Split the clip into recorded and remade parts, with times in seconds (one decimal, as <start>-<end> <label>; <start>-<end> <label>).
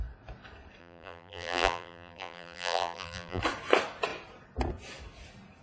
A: 0.0-0.8 recorded; 0.8-3.4 remade; 3.4-5.6 recorded